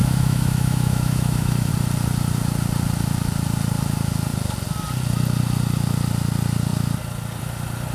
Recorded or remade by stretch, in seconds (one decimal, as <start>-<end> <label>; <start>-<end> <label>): 0.0-1.7 remade; 1.7-7.9 recorded